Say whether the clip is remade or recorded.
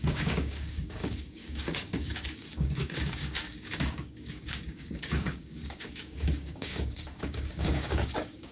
remade